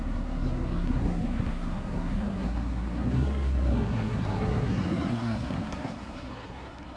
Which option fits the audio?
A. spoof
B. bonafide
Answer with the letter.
A